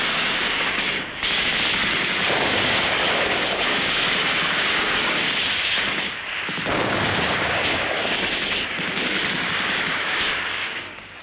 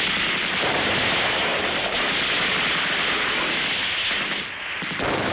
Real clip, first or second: second